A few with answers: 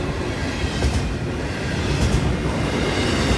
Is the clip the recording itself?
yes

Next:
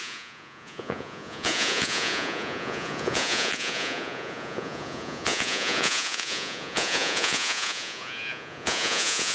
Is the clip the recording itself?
no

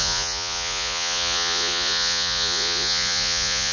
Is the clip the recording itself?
no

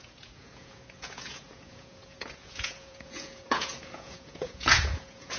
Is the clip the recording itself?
no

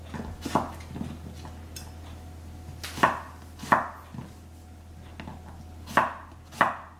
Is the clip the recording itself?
yes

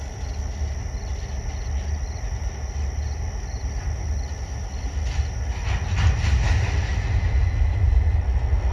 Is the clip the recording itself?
yes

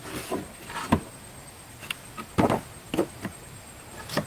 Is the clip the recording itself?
yes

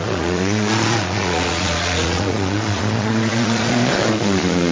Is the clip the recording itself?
no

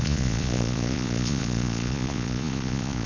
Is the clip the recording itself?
no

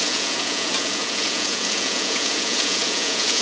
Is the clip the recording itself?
no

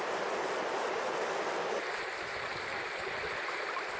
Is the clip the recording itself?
yes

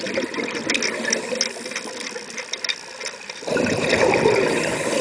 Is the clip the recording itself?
yes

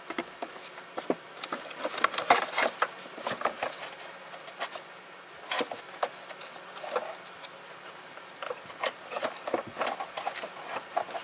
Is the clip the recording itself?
yes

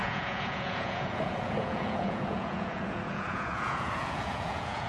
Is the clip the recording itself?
no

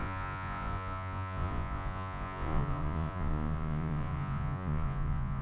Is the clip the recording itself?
no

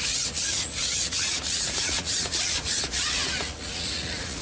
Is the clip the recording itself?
no